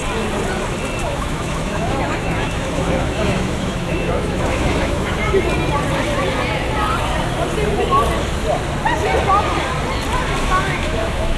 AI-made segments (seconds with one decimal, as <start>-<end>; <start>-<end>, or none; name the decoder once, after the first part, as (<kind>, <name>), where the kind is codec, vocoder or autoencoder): 1.0-5.2 (autoencoder, DAC-VAE); 10.4-11.4